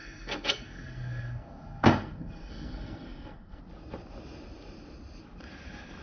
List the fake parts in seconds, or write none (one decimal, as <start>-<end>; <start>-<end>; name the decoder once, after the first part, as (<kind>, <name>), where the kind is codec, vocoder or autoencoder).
0.0-3.6 (codec, SNAC)